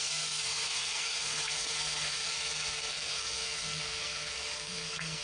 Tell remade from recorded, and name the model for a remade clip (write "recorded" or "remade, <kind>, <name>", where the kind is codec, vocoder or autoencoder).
remade, codec, SNAC